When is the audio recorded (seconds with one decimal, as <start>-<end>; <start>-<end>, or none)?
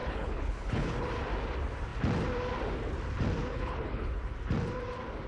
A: 1.1-3.4; 4.2-5.3